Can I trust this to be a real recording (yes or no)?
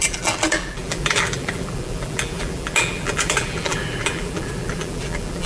no